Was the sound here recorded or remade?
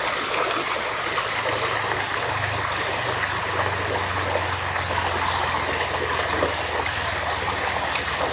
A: recorded